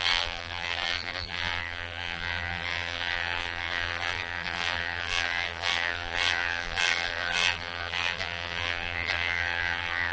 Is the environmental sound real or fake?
fake